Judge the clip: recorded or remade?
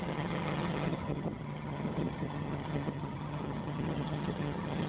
remade